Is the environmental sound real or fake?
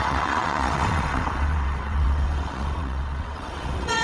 fake